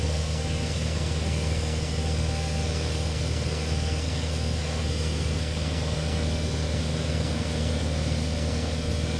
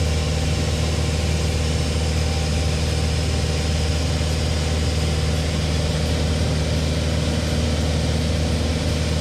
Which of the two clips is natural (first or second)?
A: second